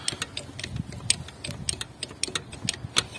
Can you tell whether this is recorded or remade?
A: recorded